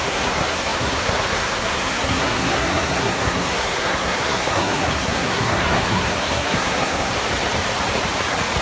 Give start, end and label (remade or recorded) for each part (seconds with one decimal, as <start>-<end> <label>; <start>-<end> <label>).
0.0-7.1 remade; 7.1-8.6 recorded